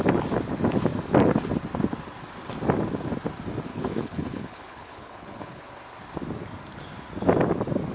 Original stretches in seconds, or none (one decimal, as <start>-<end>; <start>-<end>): 0.0-3.7; 5.6-7.9